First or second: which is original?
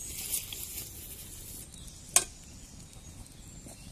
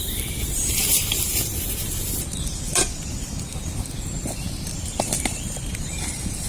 first